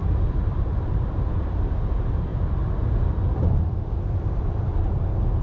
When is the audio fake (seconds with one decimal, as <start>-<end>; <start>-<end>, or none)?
0.0-5.4